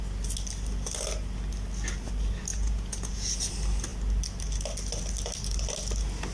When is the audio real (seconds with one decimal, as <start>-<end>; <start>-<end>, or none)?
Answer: 0.0-2.5; 3.5-6.3